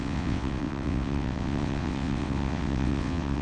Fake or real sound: fake